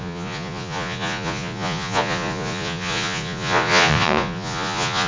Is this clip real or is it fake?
fake